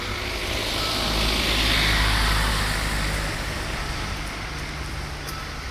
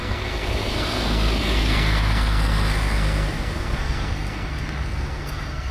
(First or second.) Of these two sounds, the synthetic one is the second